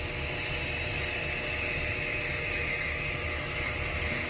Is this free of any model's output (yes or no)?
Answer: yes